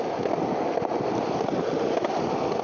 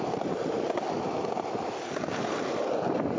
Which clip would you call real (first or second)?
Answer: first